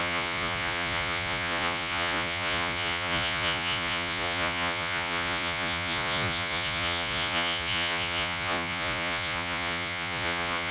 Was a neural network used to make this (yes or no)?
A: yes